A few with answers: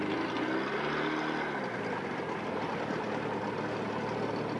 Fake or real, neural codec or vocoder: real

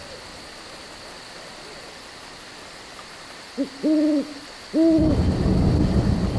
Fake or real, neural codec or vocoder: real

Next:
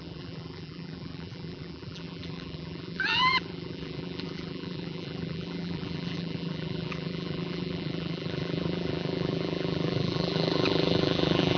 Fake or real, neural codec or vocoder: fake, vocoder, BigVGAN v2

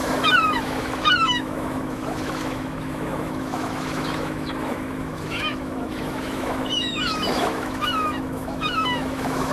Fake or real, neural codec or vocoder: fake, autoencoder, DAC-VAE